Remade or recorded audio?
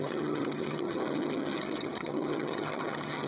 remade